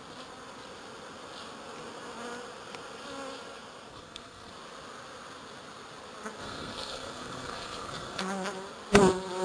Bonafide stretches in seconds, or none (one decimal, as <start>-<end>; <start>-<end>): 0.0-3.9; 4.5-6.4; 8.2-9.4